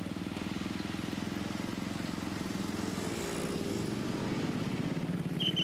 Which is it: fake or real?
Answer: real